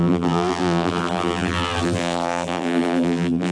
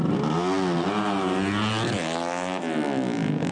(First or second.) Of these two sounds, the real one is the second